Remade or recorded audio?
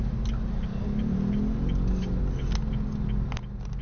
recorded